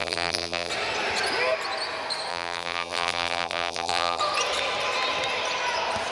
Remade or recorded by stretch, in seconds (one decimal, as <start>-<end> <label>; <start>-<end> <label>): 0.0-0.7 remade; 0.7-2.3 recorded; 2.3-4.2 remade; 4.2-6.1 recorded